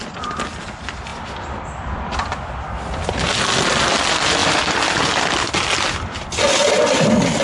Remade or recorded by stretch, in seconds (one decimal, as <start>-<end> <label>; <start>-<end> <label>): 0.0-7.4 recorded